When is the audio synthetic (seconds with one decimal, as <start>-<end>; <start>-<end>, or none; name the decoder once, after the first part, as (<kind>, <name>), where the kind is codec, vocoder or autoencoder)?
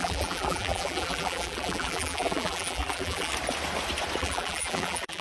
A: 0.0-3.3 (vocoder, BigVGAN v2); 4.2-5.2